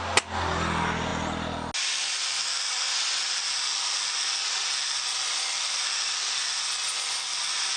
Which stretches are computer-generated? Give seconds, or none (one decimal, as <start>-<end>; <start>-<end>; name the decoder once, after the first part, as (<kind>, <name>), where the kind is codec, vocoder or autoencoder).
none